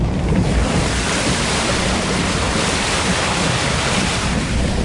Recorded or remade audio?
remade